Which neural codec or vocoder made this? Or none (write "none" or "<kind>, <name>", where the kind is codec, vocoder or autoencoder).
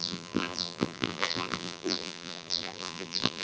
vocoder, BigVGAN v2